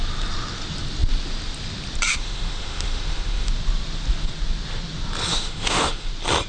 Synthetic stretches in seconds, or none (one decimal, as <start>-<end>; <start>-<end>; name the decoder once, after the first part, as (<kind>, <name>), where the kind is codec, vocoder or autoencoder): 2.1-3.5 (autoencoder, DAC-VAE); 5.3-6.1